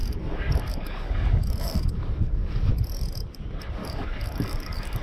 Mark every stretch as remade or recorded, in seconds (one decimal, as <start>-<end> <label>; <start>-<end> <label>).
0.0-2.7 remade; 2.7-3.8 recorded; 3.8-5.0 remade